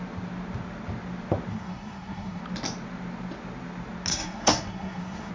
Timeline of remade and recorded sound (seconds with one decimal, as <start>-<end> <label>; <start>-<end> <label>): 0.0-1.5 recorded; 1.5-2.4 remade; 2.4-4.1 recorded; 4.1-5.3 remade

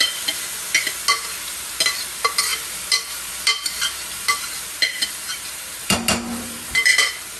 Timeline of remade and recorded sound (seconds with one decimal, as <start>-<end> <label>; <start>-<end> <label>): 0.0-2.5 recorded; 2.5-6.9 remade; 6.9-7.4 recorded

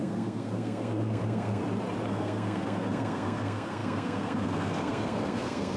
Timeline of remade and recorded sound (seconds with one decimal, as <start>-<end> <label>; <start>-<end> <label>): 0.0-1.6 remade; 1.6-2.1 recorded; 2.1-5.8 remade

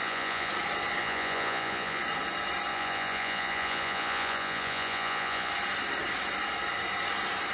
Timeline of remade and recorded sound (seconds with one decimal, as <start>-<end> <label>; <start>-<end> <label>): 0.0-0.5 remade; 0.5-1.0 recorded; 1.0-2.0 remade; 2.0-2.7 recorded; 2.7-5.5 remade; 5.5-7.5 recorded

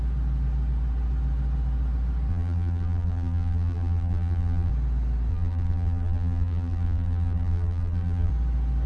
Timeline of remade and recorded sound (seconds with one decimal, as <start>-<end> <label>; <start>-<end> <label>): 0.0-2.3 recorded; 2.3-4.7 remade; 4.7-5.3 recorded; 5.3-8.3 remade; 8.3-8.9 recorded

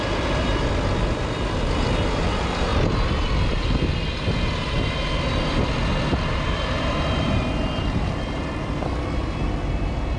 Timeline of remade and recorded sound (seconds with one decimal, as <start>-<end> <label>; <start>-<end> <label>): 0.0-4.6 recorded; 4.6-9.4 remade; 9.4-10.2 recorded

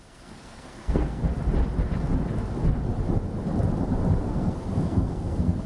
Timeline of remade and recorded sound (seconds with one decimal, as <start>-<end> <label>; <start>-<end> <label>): 0.0-1.2 remade; 1.2-4.2 recorded; 4.2-5.7 remade